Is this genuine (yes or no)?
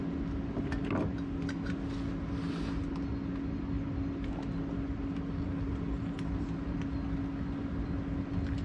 yes